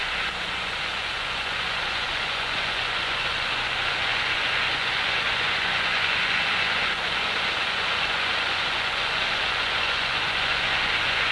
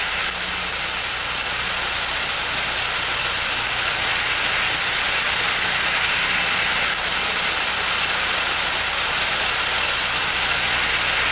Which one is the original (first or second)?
second